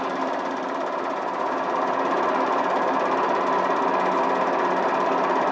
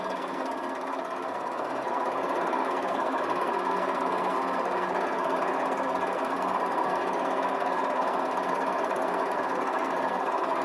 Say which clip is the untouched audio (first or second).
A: first